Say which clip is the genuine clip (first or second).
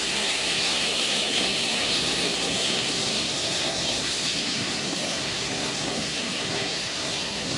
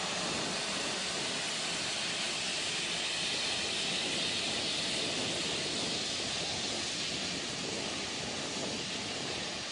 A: second